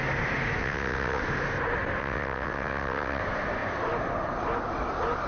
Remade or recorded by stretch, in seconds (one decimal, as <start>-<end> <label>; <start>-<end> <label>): 0.0-0.6 recorded; 0.6-1.2 remade; 1.2-2.0 recorded; 2.0-3.2 remade; 3.2-5.3 recorded